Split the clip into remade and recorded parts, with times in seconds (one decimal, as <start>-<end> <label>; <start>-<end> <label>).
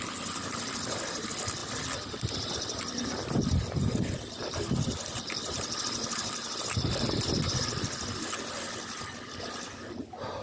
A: 0.0-10.4 recorded